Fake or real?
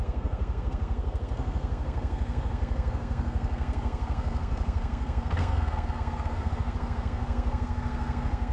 fake